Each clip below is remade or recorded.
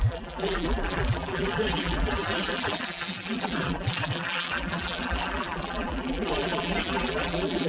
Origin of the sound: remade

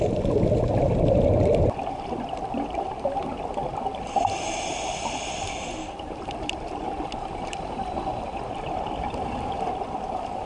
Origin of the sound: remade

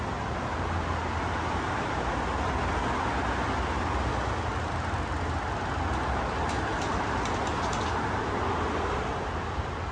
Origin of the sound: recorded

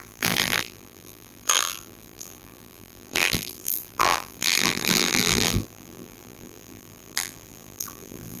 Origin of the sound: remade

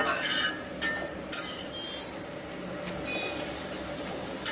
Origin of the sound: recorded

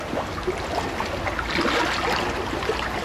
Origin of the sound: recorded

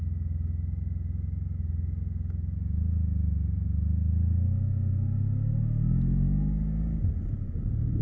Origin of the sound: recorded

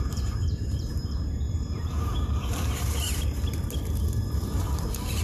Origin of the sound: remade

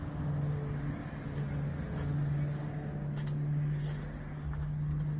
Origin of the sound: recorded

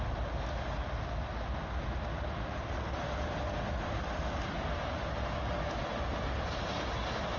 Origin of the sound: recorded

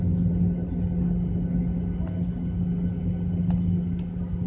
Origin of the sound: recorded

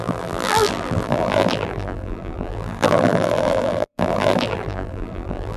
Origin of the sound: remade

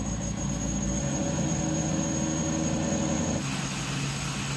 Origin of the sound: recorded